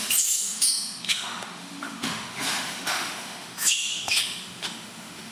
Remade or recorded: remade